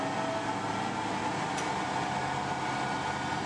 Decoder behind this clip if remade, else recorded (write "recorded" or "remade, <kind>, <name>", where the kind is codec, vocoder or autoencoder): recorded